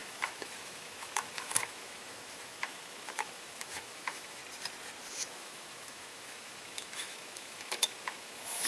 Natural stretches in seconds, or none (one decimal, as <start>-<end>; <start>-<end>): 4.4-5.1